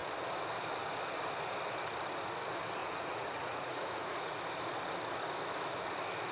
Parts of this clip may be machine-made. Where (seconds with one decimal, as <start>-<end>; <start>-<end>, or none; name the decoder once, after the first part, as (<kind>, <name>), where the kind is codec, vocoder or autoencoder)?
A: 2.8-4.4 (vocoder, Vocos)